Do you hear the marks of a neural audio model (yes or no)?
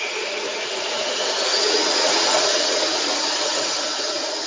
yes